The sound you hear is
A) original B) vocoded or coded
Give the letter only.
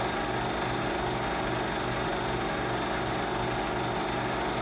A